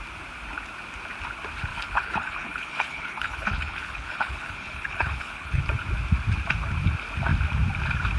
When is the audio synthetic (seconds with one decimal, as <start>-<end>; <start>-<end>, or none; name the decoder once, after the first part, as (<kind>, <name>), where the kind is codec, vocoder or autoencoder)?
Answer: 1.7-5.6 (codec, HILCodec)